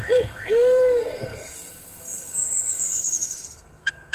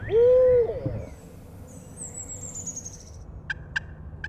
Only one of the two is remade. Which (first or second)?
first